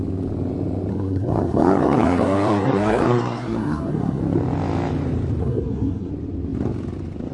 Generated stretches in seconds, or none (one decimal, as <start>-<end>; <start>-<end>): 0.9-4.2; 5.4-6.1